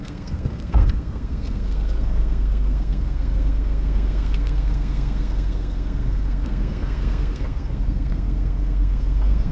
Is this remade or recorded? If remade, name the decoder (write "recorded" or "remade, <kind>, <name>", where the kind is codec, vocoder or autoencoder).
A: remade, codec, SNAC